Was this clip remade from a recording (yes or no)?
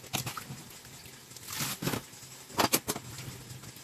no